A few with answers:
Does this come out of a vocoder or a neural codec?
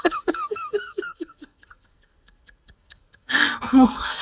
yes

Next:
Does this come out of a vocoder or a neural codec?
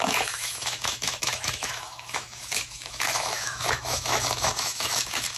yes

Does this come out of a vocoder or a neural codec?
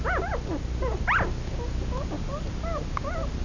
no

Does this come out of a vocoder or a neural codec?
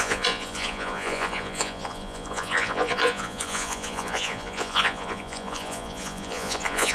yes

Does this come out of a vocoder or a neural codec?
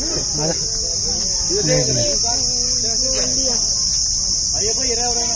no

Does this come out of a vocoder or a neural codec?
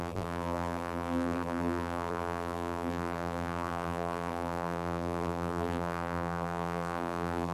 yes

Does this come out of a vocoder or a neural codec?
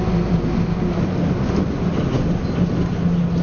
no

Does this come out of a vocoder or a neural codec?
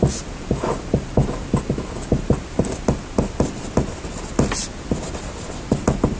no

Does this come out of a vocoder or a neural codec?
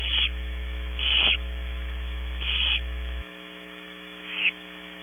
yes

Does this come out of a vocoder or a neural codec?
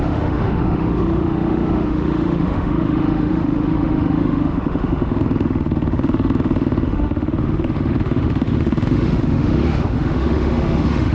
yes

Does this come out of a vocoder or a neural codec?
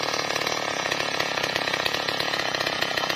yes